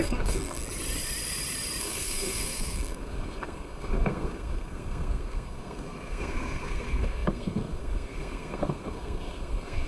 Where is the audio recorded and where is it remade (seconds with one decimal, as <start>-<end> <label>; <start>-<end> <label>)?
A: 0.0-0.6 remade; 0.6-1.8 recorded; 1.8-9.9 remade